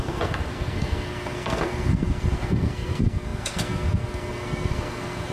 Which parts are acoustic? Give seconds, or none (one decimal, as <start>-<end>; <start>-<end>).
none